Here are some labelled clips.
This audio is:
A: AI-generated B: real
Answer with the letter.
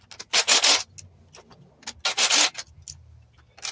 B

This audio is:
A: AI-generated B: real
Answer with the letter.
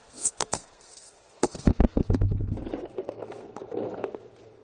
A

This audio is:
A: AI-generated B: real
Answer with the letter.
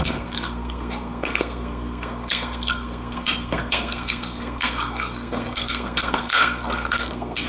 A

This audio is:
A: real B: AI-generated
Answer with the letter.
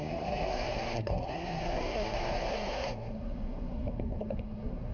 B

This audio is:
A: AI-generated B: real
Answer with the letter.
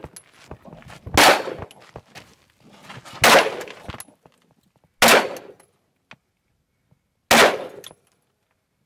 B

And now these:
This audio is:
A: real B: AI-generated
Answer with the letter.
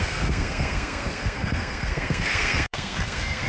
B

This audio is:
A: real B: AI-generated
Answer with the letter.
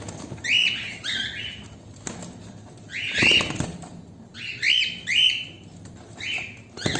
A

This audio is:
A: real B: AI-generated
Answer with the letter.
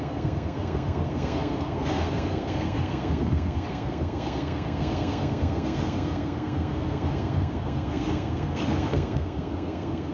B